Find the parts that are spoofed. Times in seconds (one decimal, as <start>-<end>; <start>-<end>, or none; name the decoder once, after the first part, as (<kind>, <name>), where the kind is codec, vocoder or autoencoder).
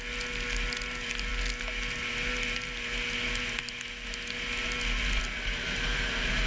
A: none